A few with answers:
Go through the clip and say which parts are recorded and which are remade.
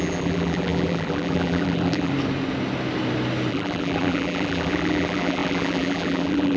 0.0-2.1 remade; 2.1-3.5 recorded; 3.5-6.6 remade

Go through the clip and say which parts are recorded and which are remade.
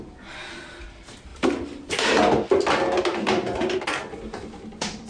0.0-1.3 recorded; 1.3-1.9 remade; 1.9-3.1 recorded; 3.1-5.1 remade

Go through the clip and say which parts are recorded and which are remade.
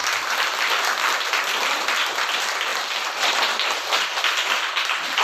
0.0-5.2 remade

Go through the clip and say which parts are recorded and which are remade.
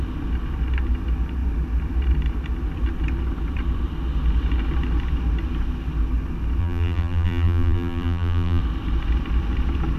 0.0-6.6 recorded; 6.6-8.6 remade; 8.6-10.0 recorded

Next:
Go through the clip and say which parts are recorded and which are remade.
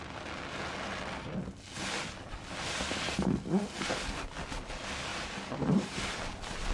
0.0-5.1 recorded; 5.1-6.3 remade; 6.3-6.7 recorded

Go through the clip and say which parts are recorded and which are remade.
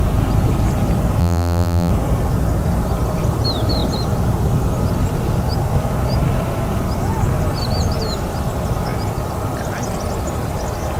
0.0-1.2 recorded; 1.2-1.9 remade; 1.9-11.0 recorded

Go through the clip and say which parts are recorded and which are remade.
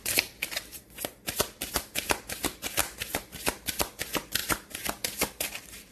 0.0-1.1 remade; 1.1-4.4 recorded; 4.4-5.9 remade